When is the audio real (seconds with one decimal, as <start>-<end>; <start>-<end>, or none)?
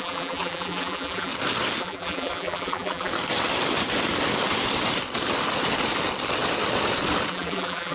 1.3-1.8; 3.1-7.3